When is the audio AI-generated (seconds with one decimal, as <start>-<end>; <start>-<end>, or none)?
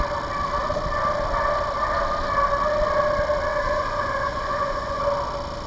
3.5-5.0